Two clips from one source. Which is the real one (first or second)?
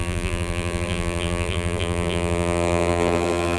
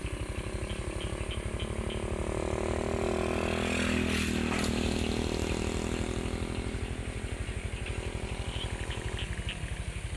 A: second